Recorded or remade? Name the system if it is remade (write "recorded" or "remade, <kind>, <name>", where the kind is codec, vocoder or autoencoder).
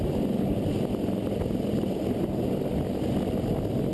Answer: recorded